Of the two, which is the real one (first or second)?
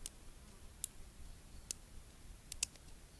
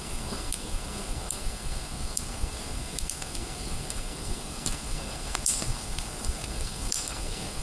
first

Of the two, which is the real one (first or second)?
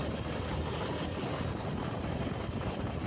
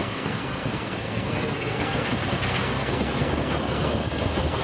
first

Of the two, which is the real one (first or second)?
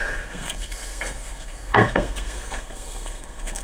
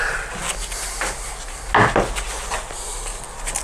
second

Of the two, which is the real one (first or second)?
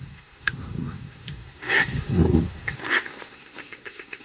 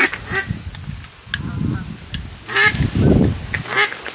second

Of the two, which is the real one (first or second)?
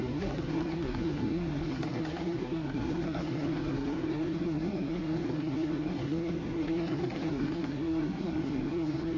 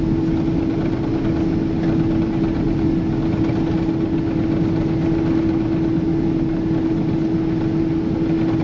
second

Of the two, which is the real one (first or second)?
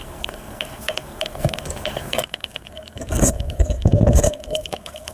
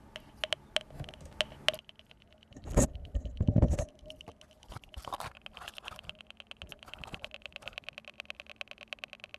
second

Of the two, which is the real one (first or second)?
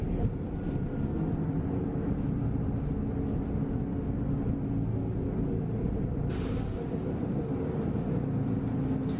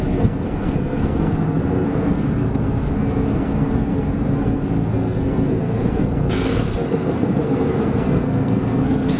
first